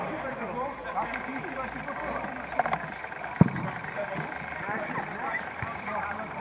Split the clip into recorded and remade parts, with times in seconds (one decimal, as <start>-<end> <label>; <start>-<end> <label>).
0.0-0.8 remade; 0.8-4.6 recorded; 4.6-6.4 remade